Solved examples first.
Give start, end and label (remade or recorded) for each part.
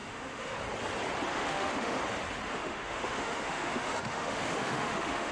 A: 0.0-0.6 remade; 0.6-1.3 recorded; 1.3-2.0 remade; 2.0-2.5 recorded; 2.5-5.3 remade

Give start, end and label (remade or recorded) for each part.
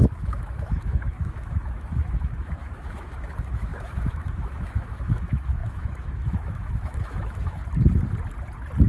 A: 0.0-7.6 remade; 7.6-8.9 recorded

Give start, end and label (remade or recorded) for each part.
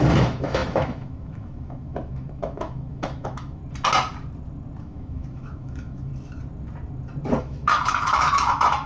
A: 0.0-3.6 remade; 3.6-4.8 recorded; 4.8-6.1 remade; 6.1-7.4 recorded; 7.4-8.9 remade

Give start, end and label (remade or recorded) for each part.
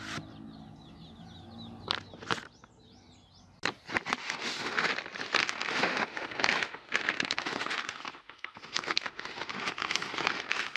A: 0.0-4.2 recorded; 4.2-4.9 remade; 4.9-5.4 recorded; 5.4-10.8 remade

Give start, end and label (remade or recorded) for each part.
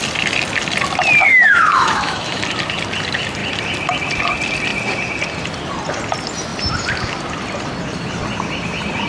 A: 0.0-1.3 recorded; 1.3-2.4 remade; 2.4-9.1 recorded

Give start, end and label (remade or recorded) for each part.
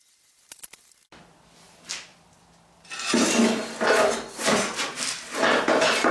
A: 0.0-6.1 recorded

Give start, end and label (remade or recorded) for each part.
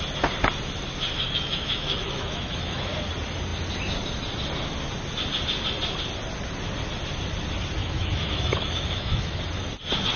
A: 0.0-1.1 recorded; 1.1-2.9 remade; 2.9-7.8 recorded; 7.8-9.4 remade; 9.4-10.2 recorded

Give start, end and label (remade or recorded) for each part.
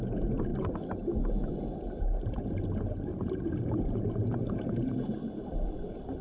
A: 0.0-6.2 recorded